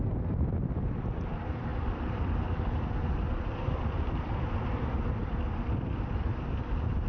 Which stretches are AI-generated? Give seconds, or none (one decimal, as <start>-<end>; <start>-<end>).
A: 0.0-7.1